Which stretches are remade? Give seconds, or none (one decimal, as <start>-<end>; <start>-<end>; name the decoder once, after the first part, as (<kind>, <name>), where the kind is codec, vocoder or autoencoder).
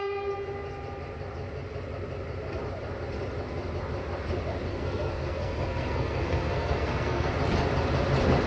4.7-7.3 (codec, SNAC)